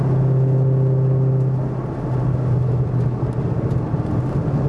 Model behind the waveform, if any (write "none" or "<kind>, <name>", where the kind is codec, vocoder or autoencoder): none